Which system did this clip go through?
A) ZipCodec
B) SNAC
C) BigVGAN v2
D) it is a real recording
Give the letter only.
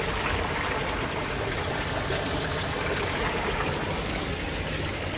D